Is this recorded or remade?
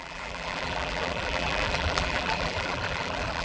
remade